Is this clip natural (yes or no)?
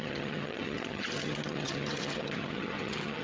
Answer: no